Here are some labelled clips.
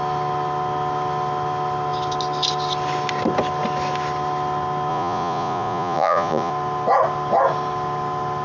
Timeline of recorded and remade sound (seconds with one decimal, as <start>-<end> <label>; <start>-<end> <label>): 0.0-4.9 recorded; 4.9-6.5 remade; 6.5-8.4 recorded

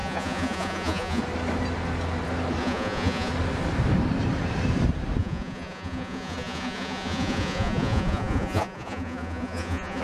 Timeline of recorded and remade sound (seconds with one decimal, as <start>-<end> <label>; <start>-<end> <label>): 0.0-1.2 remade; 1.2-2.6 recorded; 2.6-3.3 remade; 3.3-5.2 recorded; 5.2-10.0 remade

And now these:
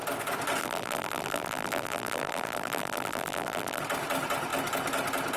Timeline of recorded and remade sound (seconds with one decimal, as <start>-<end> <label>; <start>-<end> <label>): 0.0-0.6 recorded; 0.6-3.8 remade; 3.8-5.4 recorded

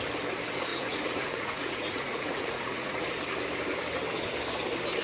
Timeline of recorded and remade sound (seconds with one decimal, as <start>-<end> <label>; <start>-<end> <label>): 0.0-0.7 recorded; 0.7-3.1 remade; 3.1-5.0 recorded